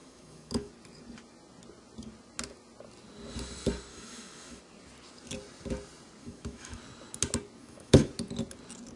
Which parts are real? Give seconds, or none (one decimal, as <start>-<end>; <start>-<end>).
0.7-3.9; 4.6-6.2; 6.8-7.6; 8.1-9.0